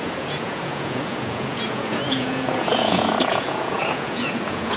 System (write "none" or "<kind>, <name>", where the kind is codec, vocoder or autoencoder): vocoder, Vocos